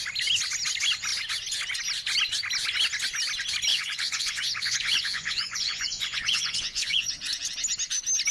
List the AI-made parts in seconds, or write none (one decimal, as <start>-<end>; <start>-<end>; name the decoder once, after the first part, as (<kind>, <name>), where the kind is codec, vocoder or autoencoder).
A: 3.7-7.1 (vocoder, Vocos)